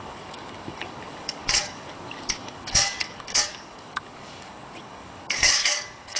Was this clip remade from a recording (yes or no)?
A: yes